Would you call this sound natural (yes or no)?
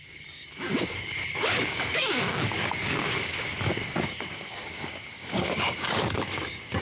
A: no